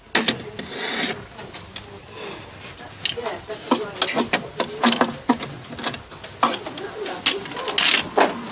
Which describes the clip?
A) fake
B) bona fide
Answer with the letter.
B